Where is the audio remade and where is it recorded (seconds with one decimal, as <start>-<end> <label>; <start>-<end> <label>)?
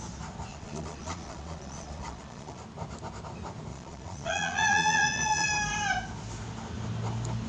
0.0-0.5 recorded; 0.5-2.6 remade; 2.6-3.7 recorded; 3.7-5.5 remade; 5.5-7.5 recorded